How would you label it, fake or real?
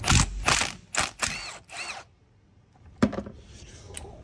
real